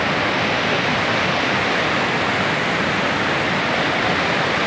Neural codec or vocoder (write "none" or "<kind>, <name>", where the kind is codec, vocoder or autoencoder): none